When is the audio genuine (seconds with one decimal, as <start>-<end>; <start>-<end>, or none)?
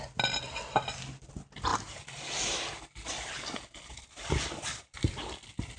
0.0-5.8